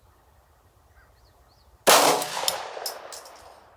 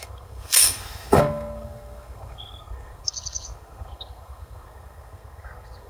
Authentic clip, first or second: first